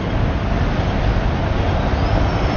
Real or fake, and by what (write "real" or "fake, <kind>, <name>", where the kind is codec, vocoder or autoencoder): real